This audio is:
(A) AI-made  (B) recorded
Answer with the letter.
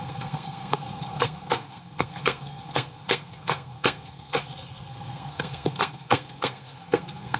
A